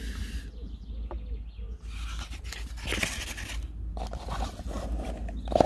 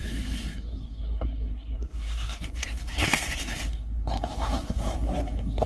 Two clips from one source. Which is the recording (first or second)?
first